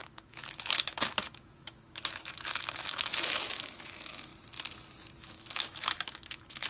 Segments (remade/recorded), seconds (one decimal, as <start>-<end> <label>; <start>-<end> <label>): 0.0-4.3 remade; 4.3-5.2 recorded; 5.2-6.7 remade